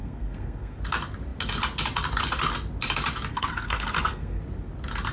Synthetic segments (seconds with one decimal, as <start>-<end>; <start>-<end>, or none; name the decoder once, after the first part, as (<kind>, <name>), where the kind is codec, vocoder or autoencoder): 0.0-0.8 (codec, SNAC); 3.3-4.4